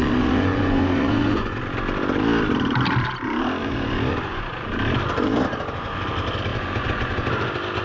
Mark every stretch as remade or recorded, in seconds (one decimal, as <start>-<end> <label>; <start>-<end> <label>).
0.0-1.6 remade; 1.6-3.6 recorded; 3.6-4.7 remade; 4.7-6.5 recorded; 6.5-7.3 remade; 7.3-7.8 recorded